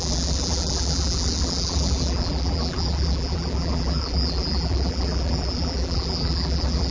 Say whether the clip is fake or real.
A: fake